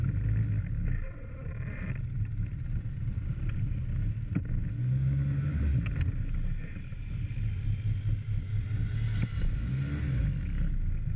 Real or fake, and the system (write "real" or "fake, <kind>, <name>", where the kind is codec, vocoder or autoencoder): real